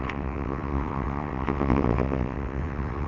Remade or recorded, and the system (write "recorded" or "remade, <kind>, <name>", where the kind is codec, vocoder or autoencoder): remade, vocoder, WaveNeXt